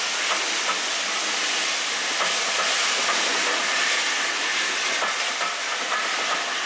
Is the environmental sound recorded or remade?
recorded